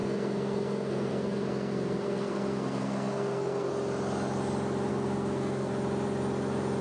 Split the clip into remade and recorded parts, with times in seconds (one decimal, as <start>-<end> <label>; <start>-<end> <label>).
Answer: 0.0-3.7 remade; 3.7-4.9 recorded; 4.9-5.7 remade; 5.7-6.8 recorded